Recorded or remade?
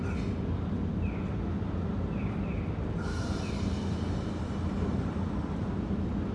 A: recorded